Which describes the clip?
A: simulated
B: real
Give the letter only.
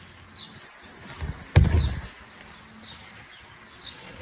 B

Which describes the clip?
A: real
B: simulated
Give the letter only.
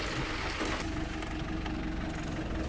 A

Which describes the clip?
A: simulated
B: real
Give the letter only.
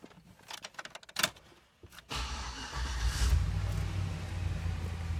B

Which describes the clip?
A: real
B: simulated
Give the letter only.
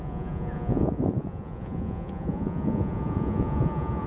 B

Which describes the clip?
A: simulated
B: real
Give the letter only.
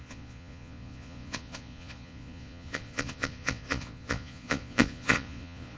A